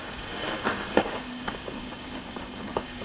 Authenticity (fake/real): fake